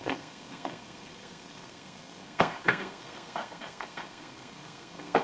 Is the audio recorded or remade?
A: remade